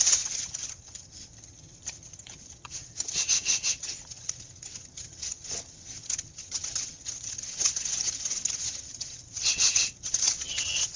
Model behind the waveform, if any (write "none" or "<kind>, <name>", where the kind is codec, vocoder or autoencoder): vocoder, HiFi-GAN